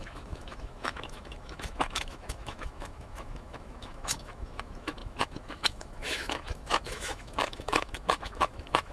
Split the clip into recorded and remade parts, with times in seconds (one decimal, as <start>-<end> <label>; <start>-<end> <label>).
0.0-8.9 remade